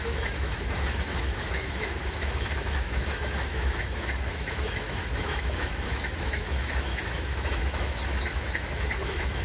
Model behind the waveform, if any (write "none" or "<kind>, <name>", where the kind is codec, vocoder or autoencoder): autoencoder, DAC-VAE